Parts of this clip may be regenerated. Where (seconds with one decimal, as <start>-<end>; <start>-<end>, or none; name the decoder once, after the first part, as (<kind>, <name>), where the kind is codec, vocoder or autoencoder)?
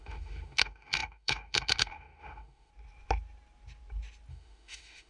0.0-2.7 (autoencoder, DAC-VAE); 4.3-5.1